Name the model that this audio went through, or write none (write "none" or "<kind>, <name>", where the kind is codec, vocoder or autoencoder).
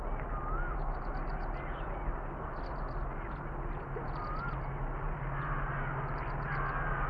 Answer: none